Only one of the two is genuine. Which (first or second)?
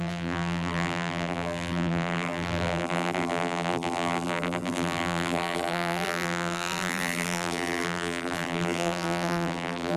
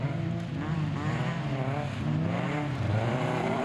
second